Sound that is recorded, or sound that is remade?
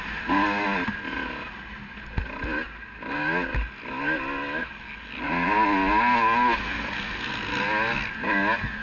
recorded